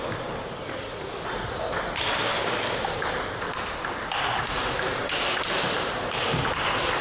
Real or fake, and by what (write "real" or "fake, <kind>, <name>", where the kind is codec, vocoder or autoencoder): real